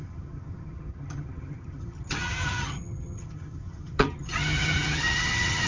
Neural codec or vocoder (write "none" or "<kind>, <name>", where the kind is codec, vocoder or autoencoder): vocoder, HiFi-GAN